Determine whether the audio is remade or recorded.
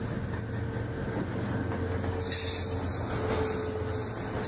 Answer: recorded